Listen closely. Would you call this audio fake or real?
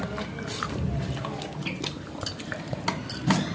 real